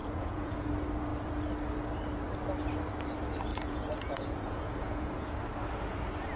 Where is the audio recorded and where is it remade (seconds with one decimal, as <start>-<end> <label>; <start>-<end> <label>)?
0.0-0.7 remade; 0.7-3.5 recorded; 3.5-5.4 remade; 5.4-6.4 recorded